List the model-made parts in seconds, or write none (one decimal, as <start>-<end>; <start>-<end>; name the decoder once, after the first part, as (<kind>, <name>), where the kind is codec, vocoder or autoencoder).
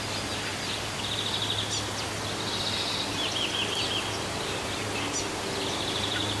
none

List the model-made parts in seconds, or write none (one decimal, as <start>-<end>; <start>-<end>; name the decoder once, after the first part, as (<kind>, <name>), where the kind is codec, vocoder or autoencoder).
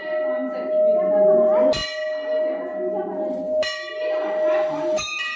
none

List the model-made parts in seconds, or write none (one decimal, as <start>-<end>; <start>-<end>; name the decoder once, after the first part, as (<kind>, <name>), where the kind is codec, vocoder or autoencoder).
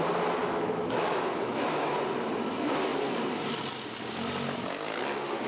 0.4-1.9 (autoencoder, DAC-VAE)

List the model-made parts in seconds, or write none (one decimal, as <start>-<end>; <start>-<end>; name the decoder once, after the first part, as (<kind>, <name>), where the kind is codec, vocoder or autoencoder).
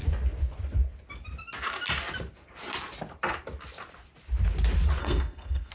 5.0-5.7 (codec, SNAC)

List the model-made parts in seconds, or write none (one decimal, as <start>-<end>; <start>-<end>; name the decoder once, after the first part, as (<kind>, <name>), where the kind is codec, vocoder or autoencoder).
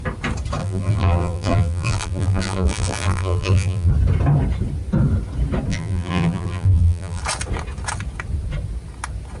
0.6-3.9 (vocoder, BigVGAN v2); 5.7-7.2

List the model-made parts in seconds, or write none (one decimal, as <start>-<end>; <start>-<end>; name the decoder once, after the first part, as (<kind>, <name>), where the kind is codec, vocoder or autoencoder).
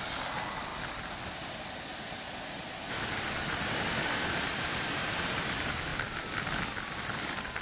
0.0-5.9 (vocoder, BigVGAN v2); 6.8-7.6